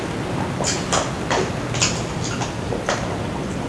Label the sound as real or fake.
real